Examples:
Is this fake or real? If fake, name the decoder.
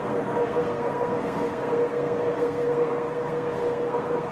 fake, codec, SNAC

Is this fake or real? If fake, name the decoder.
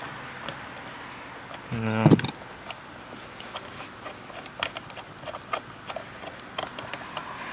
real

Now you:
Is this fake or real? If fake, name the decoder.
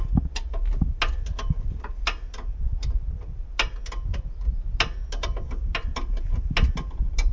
real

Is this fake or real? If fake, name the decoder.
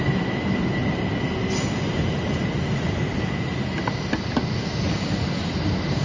real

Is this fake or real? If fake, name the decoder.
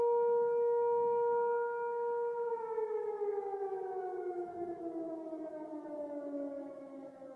fake, autoencoder, DAC-VAE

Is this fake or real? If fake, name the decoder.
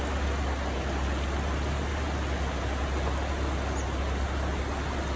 real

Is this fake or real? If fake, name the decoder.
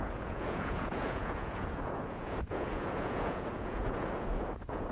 fake, vocoder, Vocos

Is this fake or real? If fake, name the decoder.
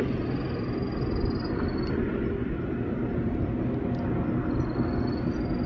real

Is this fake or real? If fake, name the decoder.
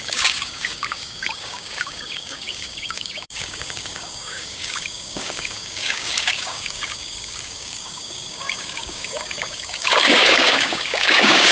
fake, codec, DAC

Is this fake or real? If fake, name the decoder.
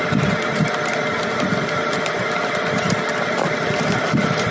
real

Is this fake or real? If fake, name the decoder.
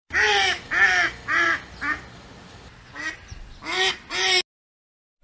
real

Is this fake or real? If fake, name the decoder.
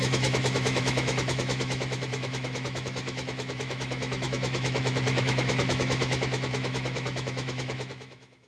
fake, autoencoder, DAC-VAE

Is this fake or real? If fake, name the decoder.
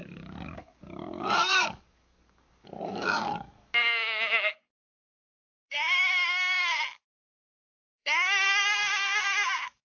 fake, codec, DAC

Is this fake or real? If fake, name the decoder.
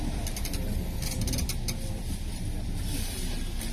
fake, vocoder, BigVGAN v2